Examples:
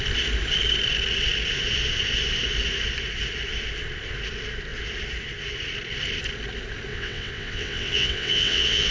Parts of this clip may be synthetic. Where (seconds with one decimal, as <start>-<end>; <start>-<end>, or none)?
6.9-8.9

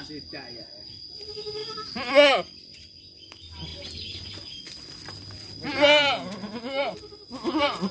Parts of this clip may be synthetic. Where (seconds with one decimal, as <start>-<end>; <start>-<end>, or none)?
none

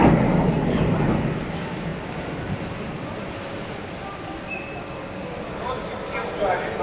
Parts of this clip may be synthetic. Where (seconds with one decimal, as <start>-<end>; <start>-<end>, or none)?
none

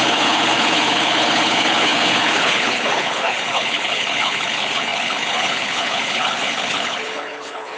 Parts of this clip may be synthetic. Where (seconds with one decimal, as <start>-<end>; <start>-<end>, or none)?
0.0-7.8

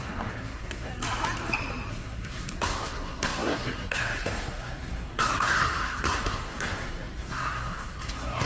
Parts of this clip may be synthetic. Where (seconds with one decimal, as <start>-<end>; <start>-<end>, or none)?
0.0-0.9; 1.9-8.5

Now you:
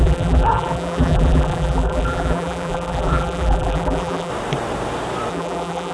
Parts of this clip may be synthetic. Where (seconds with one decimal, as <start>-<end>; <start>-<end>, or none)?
0.0-4.3; 5.3-5.9